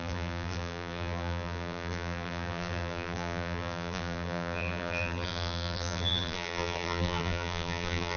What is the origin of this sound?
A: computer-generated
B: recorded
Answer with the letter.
A